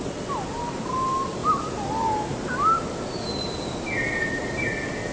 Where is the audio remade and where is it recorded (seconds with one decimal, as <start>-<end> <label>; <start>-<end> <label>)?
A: 0.0-5.1 recorded

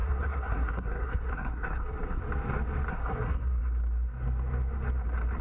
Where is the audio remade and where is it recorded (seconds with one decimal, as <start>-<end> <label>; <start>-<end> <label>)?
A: 0.0-2.2 remade; 2.2-2.9 recorded; 2.9-3.6 remade; 3.6-5.4 recorded